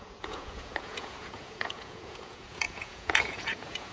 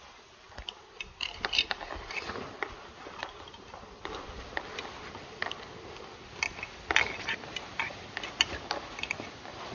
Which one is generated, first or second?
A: first